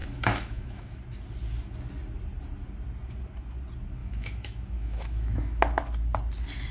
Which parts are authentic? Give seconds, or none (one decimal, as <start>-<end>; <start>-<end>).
1.0-4.0; 5.6-6.7

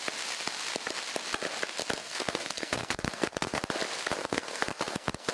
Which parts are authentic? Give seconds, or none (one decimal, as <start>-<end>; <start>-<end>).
0.0-2.0; 3.6-4.2

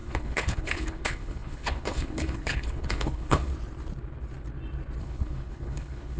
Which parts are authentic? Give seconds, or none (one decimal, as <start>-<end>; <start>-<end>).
3.5-5.0

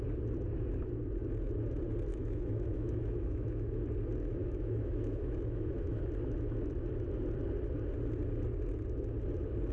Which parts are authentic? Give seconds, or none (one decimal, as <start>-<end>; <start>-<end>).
0.0-2.1; 3.8-4.4; 6.0-9.7

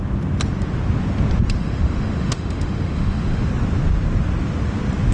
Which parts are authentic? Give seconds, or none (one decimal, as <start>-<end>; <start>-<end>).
0.0-1.6; 3.5-5.1

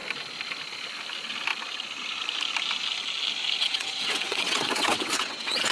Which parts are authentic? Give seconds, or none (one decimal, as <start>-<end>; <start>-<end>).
0.0-3.6